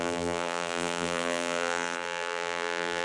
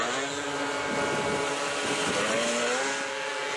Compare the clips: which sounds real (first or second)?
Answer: second